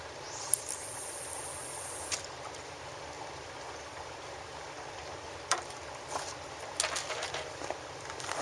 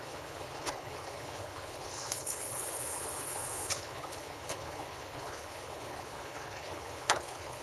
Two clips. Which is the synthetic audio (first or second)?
second